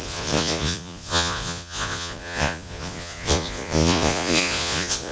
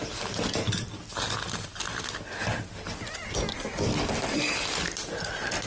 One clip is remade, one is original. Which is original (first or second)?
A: second